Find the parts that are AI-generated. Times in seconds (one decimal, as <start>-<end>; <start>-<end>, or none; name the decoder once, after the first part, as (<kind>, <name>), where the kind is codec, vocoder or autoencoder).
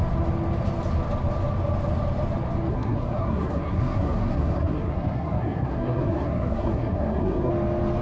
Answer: 2.7-7.5 (codec, SNAC)